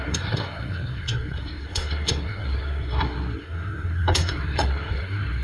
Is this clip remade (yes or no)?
yes